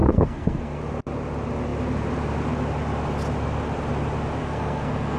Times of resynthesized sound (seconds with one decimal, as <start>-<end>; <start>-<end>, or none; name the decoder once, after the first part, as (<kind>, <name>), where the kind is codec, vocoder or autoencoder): 0.0-0.8 (codec, SNAC); 4.4-5.2